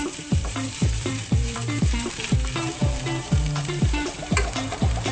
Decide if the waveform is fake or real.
fake